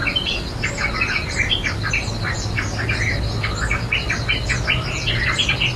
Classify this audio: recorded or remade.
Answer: recorded